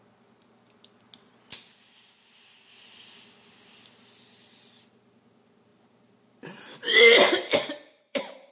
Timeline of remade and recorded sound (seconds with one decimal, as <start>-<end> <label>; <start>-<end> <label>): 0.0-5.7 recorded; 5.7-8.5 remade